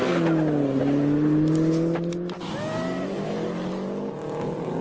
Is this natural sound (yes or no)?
yes